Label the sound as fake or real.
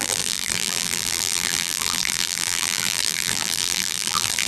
fake